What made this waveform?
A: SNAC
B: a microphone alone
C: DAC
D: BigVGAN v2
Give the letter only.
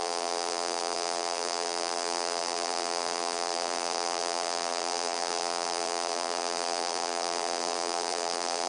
D